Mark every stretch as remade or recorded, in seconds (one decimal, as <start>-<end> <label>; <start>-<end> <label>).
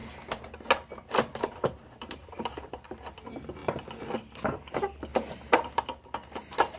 0.0-1.8 recorded; 1.8-3.6 remade; 3.6-4.3 recorded; 4.3-6.8 remade